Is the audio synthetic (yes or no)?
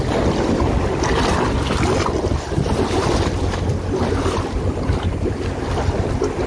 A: no